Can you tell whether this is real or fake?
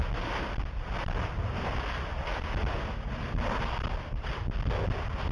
real